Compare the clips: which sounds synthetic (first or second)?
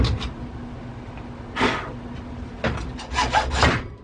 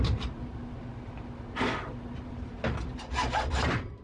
second